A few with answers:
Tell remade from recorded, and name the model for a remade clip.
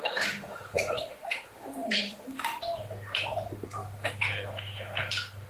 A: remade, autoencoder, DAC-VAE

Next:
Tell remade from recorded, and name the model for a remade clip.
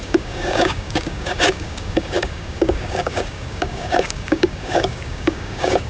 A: remade, codec, DAC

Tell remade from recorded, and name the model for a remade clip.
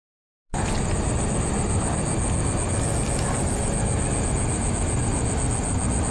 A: recorded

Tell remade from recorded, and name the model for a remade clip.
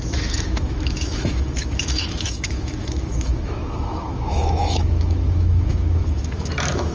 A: remade, autoencoder, DAC-VAE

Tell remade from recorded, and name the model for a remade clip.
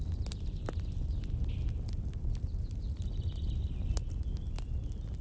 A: recorded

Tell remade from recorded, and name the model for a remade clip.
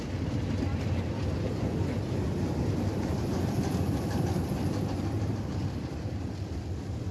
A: remade, vocoder, BigVGAN v2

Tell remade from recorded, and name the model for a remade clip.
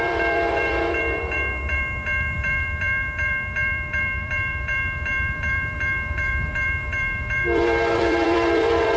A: remade, vocoder, BigVGAN v2